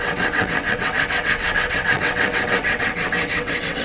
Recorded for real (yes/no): no